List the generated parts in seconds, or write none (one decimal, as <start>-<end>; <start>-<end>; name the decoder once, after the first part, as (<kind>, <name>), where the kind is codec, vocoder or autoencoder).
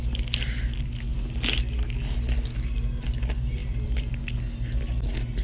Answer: 3.6-4.1 (vocoder, BigVGAN v2)